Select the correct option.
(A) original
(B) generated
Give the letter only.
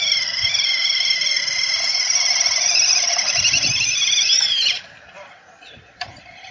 A